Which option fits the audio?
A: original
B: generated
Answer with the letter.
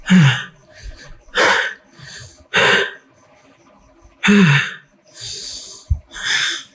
A